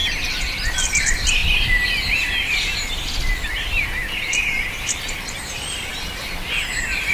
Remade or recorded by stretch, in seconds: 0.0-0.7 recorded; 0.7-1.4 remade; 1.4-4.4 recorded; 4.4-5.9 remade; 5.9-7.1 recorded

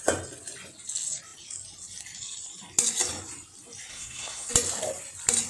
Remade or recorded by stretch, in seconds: 0.0-3.9 recorded; 3.9-4.5 remade; 4.5-5.5 recorded

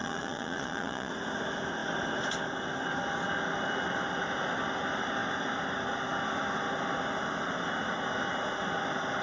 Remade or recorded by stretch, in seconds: 0.0-1.1 remade; 1.1-9.2 recorded

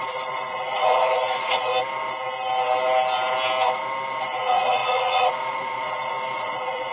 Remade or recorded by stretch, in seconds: 0.0-1.7 remade; 1.7-4.2 recorded; 4.2-6.9 remade

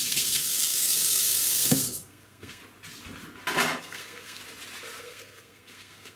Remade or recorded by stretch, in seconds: 0.0-2.6 remade; 2.6-3.8 recorded; 3.8-4.4 remade; 4.4-5.0 recorded; 5.0-6.2 remade